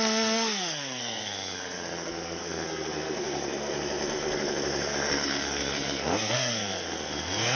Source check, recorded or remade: remade